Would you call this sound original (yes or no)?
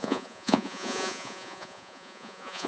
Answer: no